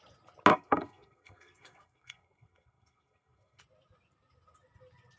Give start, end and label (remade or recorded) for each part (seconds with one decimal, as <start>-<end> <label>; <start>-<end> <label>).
0.0-0.5 recorded; 0.5-3.6 remade; 3.6-5.2 recorded

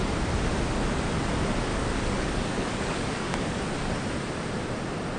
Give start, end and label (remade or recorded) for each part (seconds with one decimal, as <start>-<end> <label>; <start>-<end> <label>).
0.0-1.7 recorded; 1.7-3.6 remade; 3.6-5.2 recorded

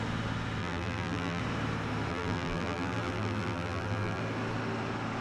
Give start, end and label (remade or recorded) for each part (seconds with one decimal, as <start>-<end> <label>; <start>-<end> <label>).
0.0-0.6 recorded; 0.6-1.4 remade; 1.4-2.1 recorded; 2.1-4.2 remade; 4.2-5.2 recorded

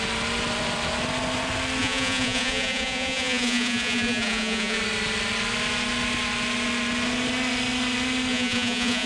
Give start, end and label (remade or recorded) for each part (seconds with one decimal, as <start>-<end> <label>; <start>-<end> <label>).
0.0-1.8 recorded; 1.8-4.8 remade; 4.8-8.3 recorded; 8.3-9.1 remade

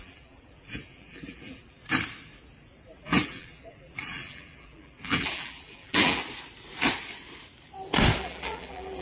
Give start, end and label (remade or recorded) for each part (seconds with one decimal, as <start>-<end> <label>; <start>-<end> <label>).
0.0-1.8 remade; 1.8-2.9 recorded; 2.9-6.2 remade; 6.2-8.2 recorded; 8.2-9.0 remade